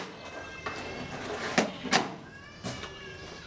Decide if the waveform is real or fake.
real